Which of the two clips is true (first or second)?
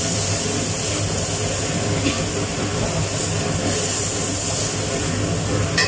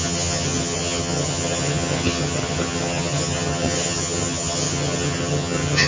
first